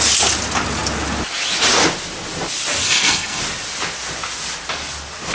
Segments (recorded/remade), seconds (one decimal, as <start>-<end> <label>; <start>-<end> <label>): 0.0-2.8 recorded; 2.8-3.4 remade; 3.4-5.3 recorded